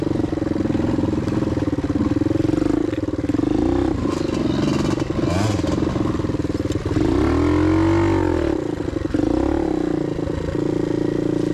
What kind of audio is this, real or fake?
real